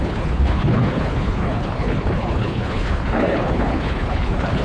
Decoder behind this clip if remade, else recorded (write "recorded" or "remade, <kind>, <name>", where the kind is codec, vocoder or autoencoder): remade, codec, HILCodec